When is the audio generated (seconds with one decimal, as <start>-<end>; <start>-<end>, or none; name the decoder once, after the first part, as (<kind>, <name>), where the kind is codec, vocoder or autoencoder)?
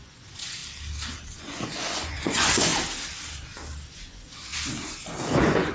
0.0-0.6 (vocoder, Vocos); 1.4-2.7; 3.9-4.5; 5.2-5.7